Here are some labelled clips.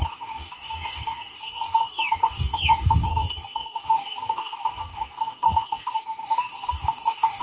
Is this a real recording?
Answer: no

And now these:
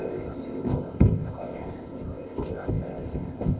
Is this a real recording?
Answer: no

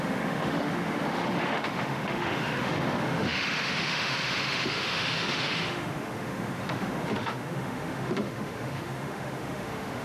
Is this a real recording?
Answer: no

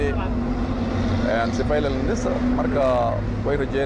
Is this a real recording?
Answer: yes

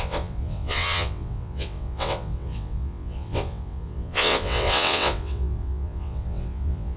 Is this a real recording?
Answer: no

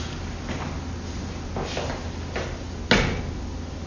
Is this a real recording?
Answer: yes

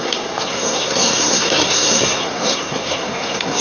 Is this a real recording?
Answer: no